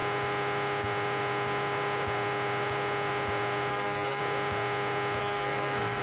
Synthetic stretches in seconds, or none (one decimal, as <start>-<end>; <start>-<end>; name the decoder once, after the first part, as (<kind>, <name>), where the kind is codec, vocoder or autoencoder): 3.7-4.2 (codec, SNAC); 5.2-6.0